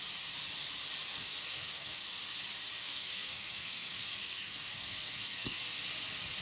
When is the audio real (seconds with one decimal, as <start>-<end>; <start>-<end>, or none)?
0.0-1.1; 2.0-2.8; 5.6-6.4